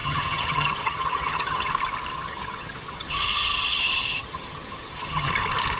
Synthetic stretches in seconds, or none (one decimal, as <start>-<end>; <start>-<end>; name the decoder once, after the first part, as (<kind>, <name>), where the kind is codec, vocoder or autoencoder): 0.0-1.7 (vocoder, HiFi-GAN); 2.1-5.3